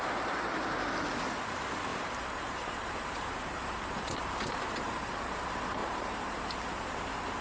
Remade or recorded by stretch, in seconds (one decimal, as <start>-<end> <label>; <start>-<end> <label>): 0.0-1.9 recorded; 1.9-5.2 remade; 5.2-5.8 recorded; 5.8-6.4 remade; 6.4-7.4 recorded